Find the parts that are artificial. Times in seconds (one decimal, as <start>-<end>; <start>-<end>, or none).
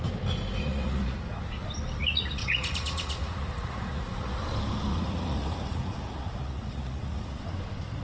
0.6-1.4; 2.0-4.4; 4.9-7.4